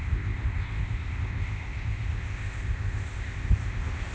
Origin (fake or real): fake